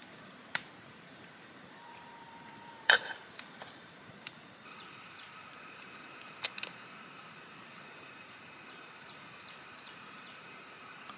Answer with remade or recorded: remade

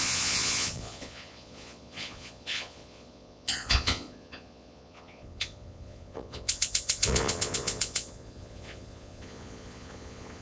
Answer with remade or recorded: remade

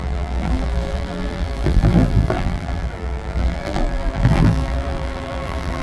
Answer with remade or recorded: remade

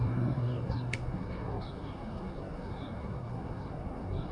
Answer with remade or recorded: remade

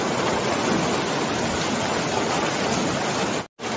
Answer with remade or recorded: recorded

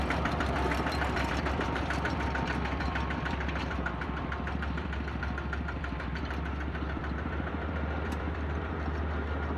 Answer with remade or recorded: remade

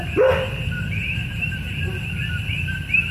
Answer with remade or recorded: recorded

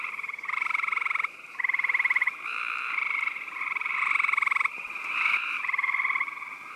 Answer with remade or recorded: remade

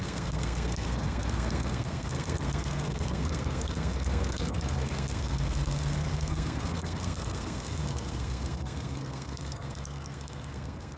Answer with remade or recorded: remade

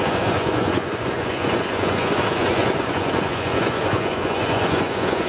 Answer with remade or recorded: remade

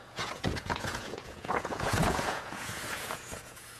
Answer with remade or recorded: remade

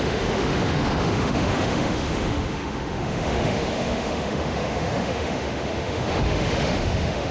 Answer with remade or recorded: remade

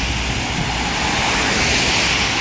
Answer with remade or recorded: recorded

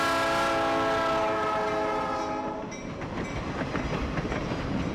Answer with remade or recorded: recorded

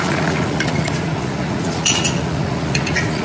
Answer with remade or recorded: remade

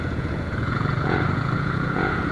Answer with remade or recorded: remade